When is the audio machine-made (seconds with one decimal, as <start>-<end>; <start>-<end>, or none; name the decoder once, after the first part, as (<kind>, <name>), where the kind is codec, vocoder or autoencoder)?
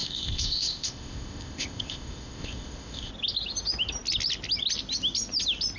0.0-3.1 (codec, ZipCodec)